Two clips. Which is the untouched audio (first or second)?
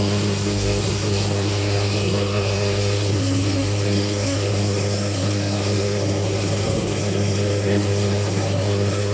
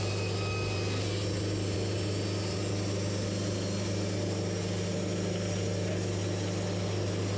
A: second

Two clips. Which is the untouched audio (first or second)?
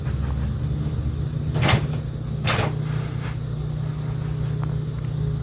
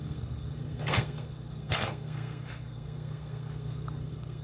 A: first